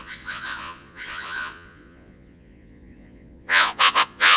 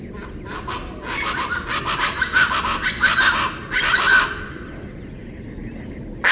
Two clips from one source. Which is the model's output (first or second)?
first